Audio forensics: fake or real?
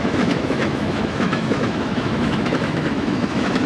fake